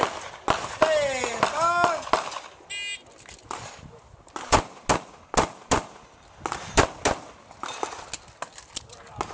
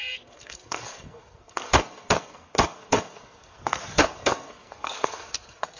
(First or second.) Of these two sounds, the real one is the first